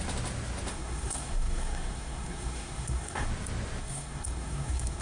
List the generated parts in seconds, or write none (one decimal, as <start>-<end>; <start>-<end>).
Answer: 0.7-3.3; 3.8-5.0